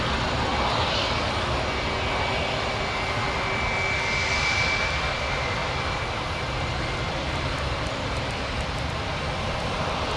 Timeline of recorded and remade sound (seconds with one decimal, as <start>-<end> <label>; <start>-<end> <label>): 0.0-10.2 recorded